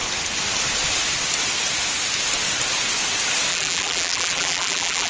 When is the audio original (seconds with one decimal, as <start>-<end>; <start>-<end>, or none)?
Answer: 0.0-3.5